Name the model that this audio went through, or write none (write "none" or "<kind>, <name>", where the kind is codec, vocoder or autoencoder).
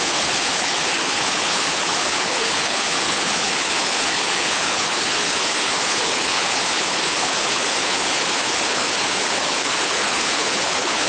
codec, HILCodec